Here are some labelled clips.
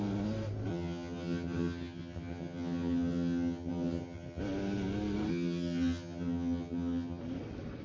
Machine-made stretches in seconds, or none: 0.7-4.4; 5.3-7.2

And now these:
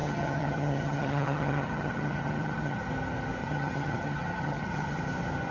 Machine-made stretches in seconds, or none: 0.0-2.9; 3.4-5.0

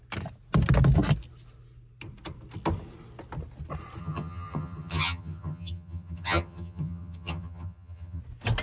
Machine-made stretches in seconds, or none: 4.0-8.2